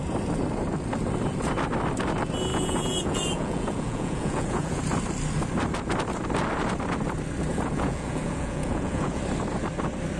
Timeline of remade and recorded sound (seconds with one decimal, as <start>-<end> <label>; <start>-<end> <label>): 0.0-2.5 recorded; 2.5-4.8 remade; 4.8-7.5 recorded; 7.5-9.2 remade; 9.2-10.2 recorded